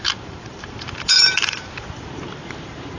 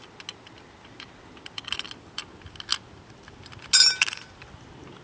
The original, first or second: second